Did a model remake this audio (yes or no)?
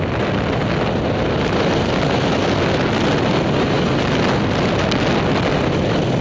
no